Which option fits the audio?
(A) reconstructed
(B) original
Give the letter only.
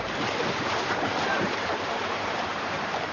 A